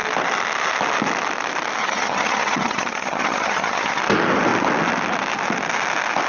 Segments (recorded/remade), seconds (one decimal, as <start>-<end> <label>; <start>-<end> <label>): 0.0-1.8 recorded; 1.8-4.0 remade; 4.0-6.3 recorded